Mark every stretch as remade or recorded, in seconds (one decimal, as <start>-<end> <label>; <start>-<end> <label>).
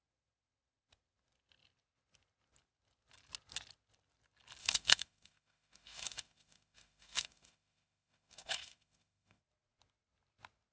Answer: 0.0-4.6 recorded; 4.6-9.4 remade; 9.4-10.7 recorded